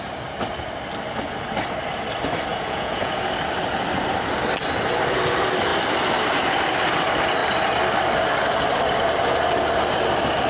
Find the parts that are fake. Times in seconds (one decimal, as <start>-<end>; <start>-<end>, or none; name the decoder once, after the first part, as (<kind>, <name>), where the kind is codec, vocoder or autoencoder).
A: 2.5-3.2 (vocoder, Vocos)